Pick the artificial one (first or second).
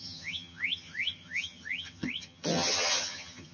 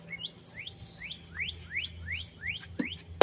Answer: first